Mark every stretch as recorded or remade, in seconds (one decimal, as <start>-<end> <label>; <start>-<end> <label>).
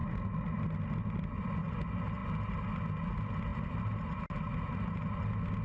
0.0-5.6 recorded